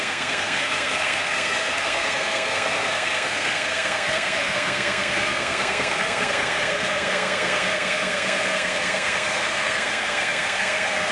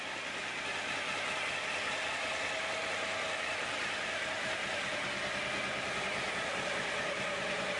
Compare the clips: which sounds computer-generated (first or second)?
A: first